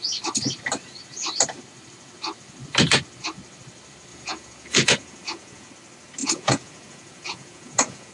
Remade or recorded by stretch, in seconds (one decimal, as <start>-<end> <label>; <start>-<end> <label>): 0.0-4.1 recorded; 4.1-5.7 remade; 5.7-6.2 recorded; 6.2-8.1 remade